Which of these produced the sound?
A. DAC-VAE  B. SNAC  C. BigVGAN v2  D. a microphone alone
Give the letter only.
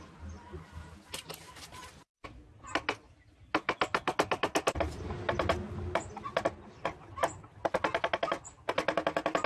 D